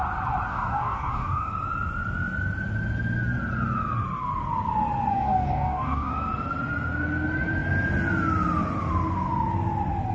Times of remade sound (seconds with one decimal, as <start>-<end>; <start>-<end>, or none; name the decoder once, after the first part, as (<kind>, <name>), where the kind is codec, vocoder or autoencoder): 0.5-1.5 (codec, DAC); 5.1-6.1